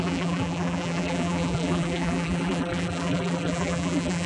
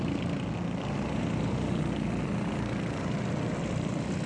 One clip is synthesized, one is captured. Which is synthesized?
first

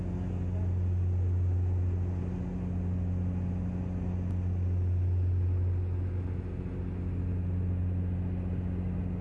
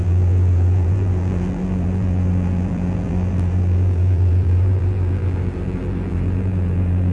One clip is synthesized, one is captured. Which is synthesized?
second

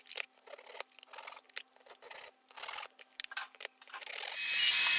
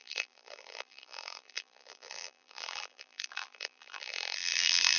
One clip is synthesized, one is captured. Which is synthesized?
second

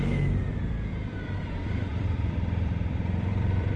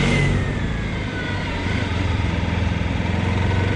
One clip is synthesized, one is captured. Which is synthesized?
first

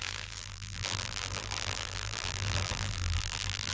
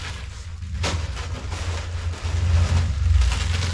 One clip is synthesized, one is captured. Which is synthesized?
first